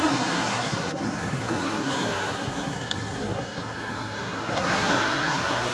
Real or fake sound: fake